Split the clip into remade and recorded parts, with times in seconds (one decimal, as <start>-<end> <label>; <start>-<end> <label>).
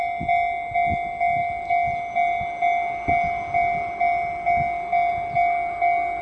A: 0.0-6.2 recorded